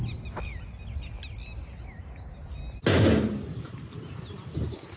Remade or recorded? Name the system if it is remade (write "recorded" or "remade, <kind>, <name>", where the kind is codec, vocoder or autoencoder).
recorded